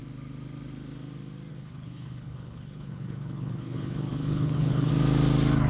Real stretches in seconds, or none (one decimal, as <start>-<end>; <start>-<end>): 0.0-1.5; 4.9-5.7